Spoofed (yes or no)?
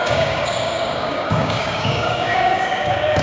yes